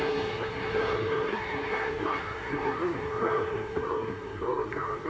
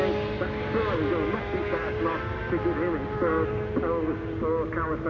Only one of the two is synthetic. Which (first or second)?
first